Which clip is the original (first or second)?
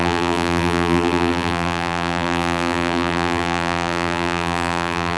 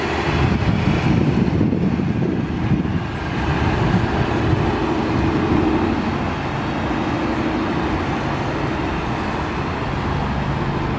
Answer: second